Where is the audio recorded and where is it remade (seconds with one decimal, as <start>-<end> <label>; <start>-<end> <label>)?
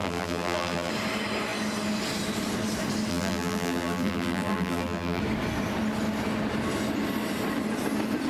0.0-0.9 remade; 0.9-3.1 recorded; 3.1-5.2 remade; 5.2-8.3 recorded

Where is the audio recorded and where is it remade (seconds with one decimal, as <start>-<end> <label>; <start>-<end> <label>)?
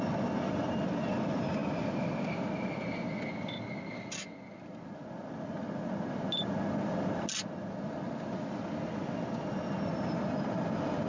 0.0-11.1 recorded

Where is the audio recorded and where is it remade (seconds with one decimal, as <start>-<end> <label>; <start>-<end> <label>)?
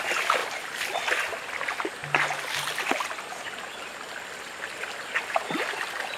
0.0-0.4 recorded; 0.4-1.1 remade; 1.1-6.2 recorded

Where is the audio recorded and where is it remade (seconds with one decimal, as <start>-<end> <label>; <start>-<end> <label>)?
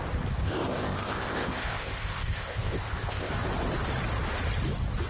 0.0-0.4 recorded; 0.4-3.3 remade; 3.3-5.1 recorded